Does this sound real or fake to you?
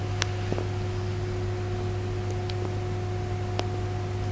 real